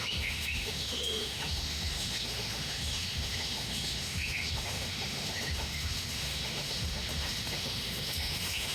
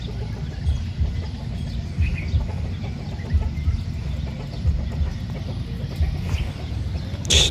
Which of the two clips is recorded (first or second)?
second